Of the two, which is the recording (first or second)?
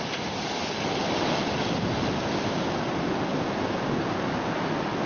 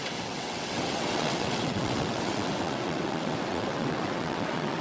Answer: first